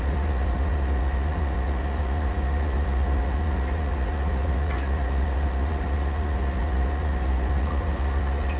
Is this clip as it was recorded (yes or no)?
no